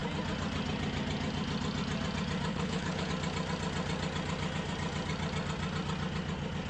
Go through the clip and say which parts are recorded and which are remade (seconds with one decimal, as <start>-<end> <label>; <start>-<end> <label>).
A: 0.0-2.5 recorded; 2.5-3.1 remade; 3.1-6.7 recorded